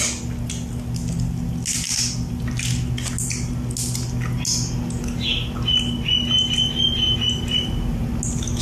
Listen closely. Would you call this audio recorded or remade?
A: recorded